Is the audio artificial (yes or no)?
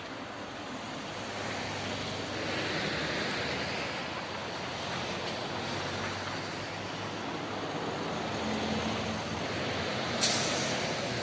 no